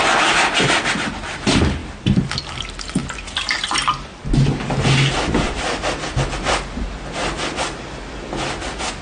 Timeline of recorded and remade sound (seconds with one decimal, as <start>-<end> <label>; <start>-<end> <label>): 0.0-9.0 recorded